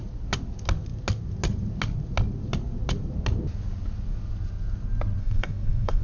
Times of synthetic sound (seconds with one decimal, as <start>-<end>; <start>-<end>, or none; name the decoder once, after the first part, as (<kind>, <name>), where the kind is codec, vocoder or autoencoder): 5.2-6.0 (codec, SNAC)

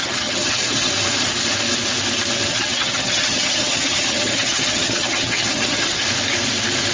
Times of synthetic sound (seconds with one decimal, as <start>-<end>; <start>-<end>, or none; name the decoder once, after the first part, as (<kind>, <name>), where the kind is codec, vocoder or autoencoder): 0.0-0.9 (vocoder, HiFi-GAN); 2.5-6.0

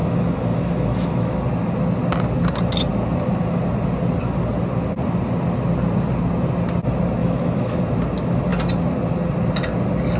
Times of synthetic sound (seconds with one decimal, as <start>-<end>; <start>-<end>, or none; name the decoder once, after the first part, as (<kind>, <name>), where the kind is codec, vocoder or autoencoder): 0.0-1.4 (autoencoder, DAC-VAE); 7.2-7.8

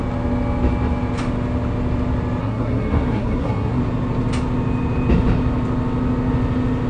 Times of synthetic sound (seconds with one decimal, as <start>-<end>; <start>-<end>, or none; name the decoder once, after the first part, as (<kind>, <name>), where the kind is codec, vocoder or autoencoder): 2.4-3.8 (codec, SNAC)

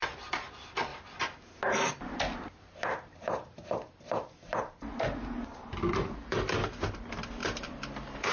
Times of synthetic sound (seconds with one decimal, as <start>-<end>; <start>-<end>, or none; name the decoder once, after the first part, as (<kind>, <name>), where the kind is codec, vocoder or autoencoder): 0.9-2.2 (vocoder, BigVGAN v2); 7.4-8.3

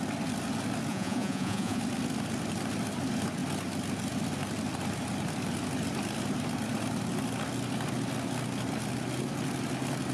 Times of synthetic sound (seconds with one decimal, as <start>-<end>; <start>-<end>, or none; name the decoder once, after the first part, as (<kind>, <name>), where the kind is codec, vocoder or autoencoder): 0.9-1.8 (vocoder, Vocos)

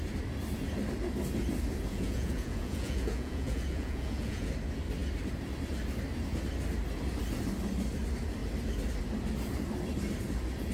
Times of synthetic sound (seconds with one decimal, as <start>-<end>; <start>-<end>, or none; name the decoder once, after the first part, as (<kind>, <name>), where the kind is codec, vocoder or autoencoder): 1.9-4.5 (vocoder, Vocos)